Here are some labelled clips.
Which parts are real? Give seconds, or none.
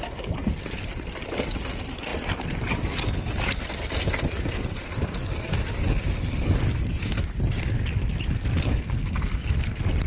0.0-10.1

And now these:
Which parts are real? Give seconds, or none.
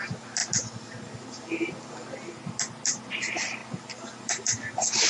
0.0-5.1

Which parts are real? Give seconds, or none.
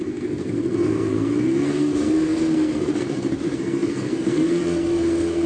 none